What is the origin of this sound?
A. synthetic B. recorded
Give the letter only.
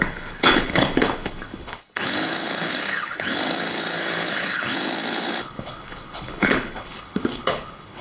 A